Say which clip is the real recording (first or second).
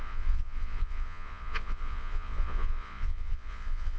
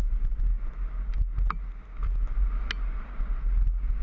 second